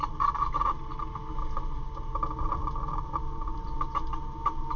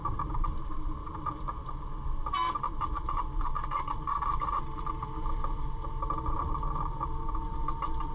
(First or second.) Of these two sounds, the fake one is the second